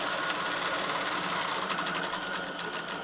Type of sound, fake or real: real